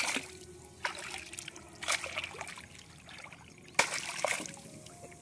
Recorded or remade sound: recorded